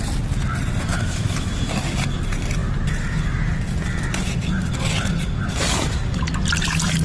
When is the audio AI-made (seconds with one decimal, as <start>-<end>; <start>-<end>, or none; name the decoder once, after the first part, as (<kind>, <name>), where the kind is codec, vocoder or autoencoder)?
0.9-1.5 (autoencoder, DAC-VAE)